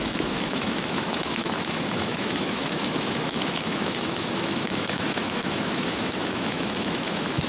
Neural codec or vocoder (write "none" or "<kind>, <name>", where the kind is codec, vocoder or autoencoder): autoencoder, DAC-VAE